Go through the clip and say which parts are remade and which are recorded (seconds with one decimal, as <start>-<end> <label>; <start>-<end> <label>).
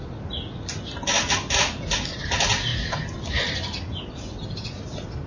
0.0-5.3 recorded